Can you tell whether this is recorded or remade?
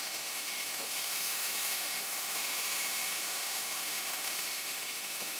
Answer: remade